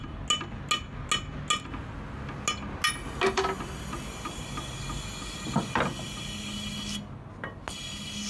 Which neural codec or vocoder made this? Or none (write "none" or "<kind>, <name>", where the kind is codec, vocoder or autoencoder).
none